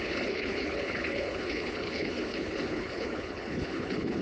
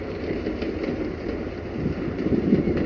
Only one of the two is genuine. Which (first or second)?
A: second